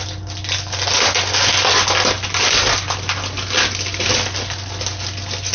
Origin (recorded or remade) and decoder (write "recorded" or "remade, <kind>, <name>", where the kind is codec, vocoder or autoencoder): recorded